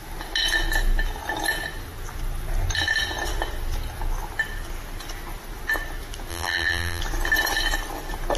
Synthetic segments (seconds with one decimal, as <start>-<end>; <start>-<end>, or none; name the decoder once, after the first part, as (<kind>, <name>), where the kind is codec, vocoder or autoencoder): 6.3-7.0 (vocoder, BigVGAN v2)